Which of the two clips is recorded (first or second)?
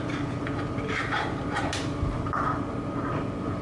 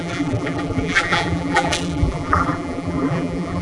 first